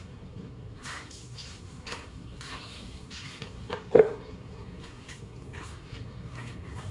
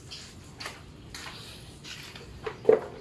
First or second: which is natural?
second